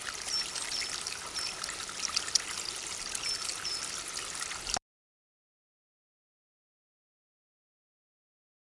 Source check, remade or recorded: recorded